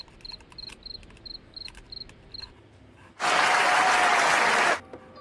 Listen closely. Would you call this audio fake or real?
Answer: real